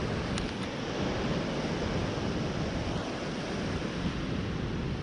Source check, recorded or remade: recorded